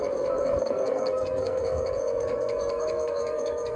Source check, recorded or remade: remade